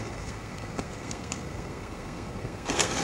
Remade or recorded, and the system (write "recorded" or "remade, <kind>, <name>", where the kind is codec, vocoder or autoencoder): remade, codec, SNAC